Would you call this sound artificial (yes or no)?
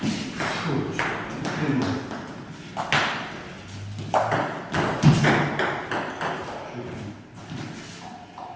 no